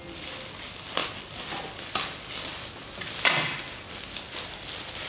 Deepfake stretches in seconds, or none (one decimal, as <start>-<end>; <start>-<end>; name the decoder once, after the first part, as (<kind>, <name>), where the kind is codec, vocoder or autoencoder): none